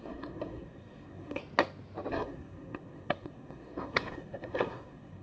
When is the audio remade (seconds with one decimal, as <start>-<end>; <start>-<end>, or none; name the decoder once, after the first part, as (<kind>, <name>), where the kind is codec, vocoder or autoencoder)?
0.0-1.4 (codec, SNAC); 2.1-5.2